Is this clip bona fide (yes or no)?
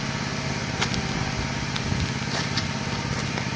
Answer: yes